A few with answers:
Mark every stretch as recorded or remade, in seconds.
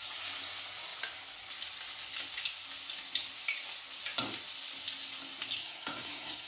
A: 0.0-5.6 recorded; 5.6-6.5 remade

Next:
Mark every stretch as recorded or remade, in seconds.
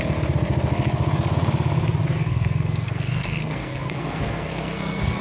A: 0.0-2.2 recorded; 2.2-5.2 remade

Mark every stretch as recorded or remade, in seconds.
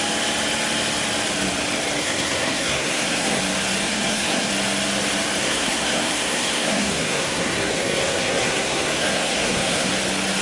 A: 0.0-2.0 recorded; 2.0-3.4 remade; 3.4-3.8 recorded; 3.8-4.5 remade; 4.5-5.4 recorded; 5.4-9.9 remade; 9.9-10.4 recorded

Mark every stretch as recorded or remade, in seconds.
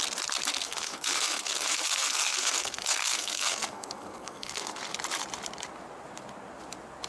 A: 0.0-0.6 recorded; 0.6-4.8 remade; 4.8-7.1 recorded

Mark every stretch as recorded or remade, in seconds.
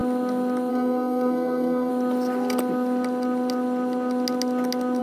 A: 0.0-0.7 recorded; 0.7-1.9 remade; 1.9-5.0 recorded